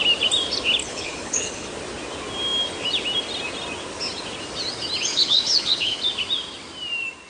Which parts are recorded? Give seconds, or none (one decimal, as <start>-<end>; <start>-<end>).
0.0-0.8; 1.7-5.1; 6.0-7.3